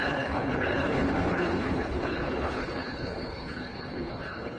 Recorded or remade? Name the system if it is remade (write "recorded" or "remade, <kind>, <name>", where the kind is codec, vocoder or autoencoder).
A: remade, codec, HILCodec